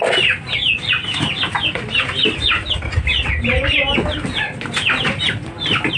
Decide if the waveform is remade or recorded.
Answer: recorded